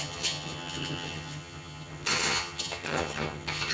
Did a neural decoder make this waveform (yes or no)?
yes